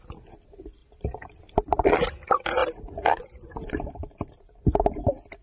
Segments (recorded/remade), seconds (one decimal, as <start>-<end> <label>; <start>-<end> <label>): 0.0-0.8 recorded; 0.8-1.7 remade; 1.7-2.6 recorded; 2.6-5.0 remade; 5.0-5.4 recorded